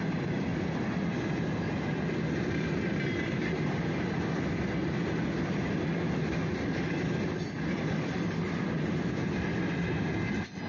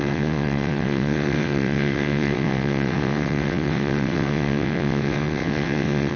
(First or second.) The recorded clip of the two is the first